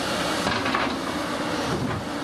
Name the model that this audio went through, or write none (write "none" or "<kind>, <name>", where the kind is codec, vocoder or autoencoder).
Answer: none